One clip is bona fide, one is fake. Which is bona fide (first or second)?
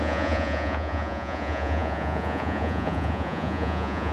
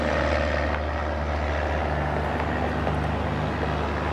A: second